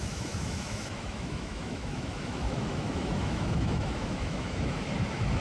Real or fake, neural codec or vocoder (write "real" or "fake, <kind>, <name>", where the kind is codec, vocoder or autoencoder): fake, autoencoder, DAC-VAE